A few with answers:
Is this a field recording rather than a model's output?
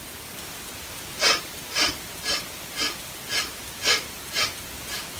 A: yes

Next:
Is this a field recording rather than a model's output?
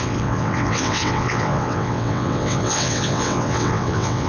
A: no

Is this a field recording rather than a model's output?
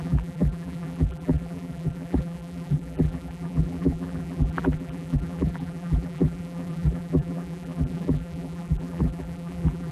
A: no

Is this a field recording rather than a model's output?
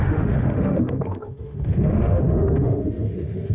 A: no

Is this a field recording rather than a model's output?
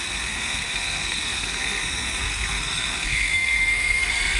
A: no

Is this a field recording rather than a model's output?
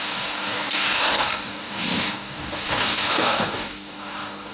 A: no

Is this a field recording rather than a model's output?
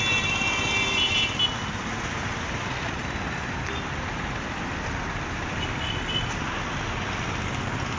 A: yes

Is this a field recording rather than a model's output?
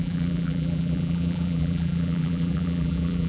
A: no